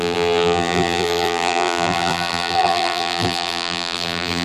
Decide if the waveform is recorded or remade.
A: remade